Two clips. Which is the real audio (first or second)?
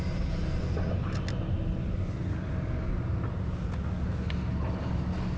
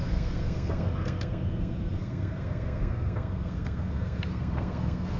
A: first